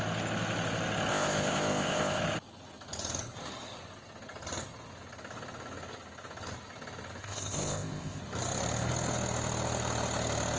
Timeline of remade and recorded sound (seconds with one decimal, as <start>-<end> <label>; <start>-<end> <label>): 0.0-1.1 recorded; 1.1-2.2 remade; 2.2-7.2 recorded; 7.2-8.2 remade; 8.2-10.6 recorded